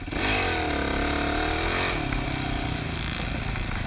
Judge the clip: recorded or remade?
recorded